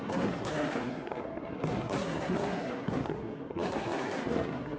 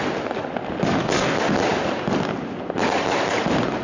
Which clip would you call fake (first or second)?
first